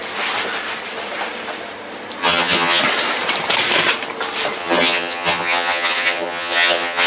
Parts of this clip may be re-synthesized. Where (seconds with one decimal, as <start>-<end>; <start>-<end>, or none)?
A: 2.2-2.8; 4.6-7.1